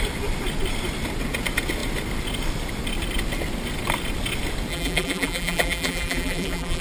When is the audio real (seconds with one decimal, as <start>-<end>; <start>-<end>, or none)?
0.0-4.7